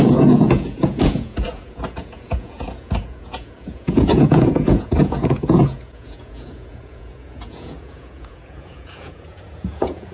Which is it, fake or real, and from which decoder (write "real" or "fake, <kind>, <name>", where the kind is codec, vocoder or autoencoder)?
fake, vocoder, Vocos